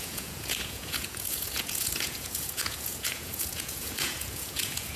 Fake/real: fake